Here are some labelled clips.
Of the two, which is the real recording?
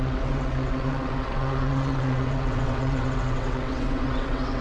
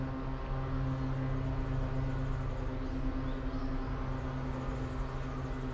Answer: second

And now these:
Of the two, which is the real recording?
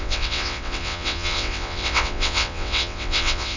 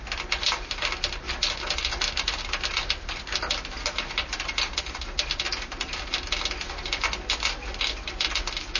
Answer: second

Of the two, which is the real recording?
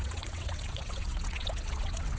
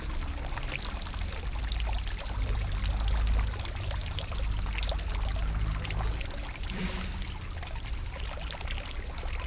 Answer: second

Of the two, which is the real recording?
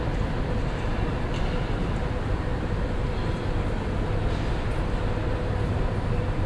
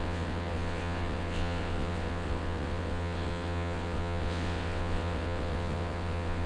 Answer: first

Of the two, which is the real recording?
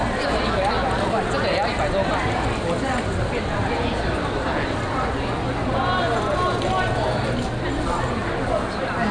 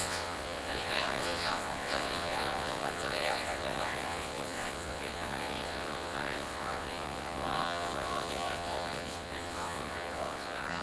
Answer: first